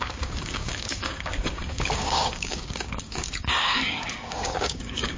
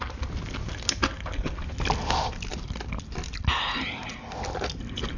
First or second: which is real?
second